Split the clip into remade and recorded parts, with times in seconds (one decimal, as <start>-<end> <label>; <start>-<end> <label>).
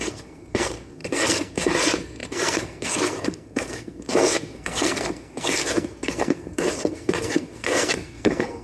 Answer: 0.0-8.6 remade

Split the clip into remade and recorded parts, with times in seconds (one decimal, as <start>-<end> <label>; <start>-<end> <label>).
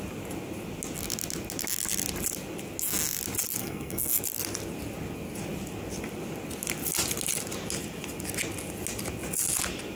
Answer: 0.0-3.6 recorded; 3.6-4.2 remade; 4.2-10.0 recorded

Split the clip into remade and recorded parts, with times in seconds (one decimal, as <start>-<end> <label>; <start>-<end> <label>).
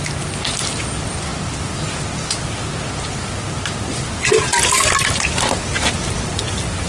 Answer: 0.0-6.9 recorded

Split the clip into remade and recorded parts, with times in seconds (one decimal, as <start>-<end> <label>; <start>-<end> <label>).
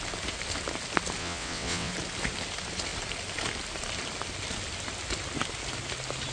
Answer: 0.0-1.2 recorded; 1.2-1.9 remade; 1.9-6.3 recorded